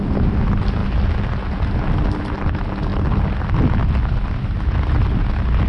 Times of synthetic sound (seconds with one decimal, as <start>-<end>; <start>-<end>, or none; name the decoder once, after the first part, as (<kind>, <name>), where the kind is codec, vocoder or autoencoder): none